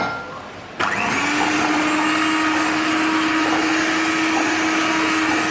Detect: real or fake real